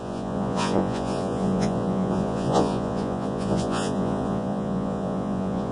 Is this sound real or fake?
fake